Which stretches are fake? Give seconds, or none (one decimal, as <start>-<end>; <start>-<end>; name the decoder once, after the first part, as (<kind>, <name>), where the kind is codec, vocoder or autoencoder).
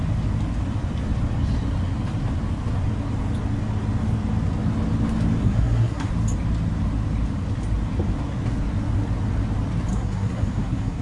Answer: 5.4-6.1 (codec, SNAC); 9.9-11.0